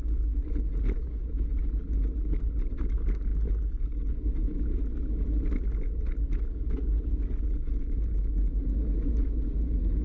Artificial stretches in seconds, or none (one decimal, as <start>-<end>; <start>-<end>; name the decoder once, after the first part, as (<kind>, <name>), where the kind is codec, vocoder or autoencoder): none